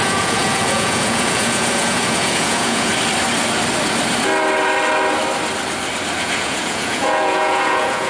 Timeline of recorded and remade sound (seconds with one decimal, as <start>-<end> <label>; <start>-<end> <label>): 0.0-2.9 remade; 2.9-6.2 recorded; 6.2-8.1 remade